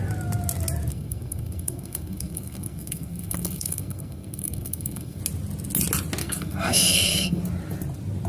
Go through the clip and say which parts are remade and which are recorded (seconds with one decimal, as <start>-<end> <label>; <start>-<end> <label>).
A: 0.0-0.9 recorded; 0.9-5.2 remade; 5.2-6.2 recorded; 6.2-7.4 remade; 7.4-8.3 recorded